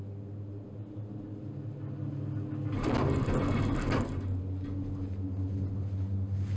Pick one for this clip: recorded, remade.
recorded